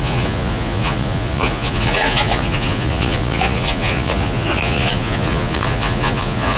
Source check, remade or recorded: remade